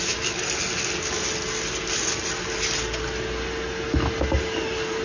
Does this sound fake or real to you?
real